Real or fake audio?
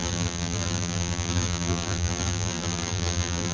fake